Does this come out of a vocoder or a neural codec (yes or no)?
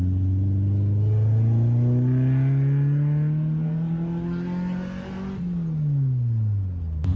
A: no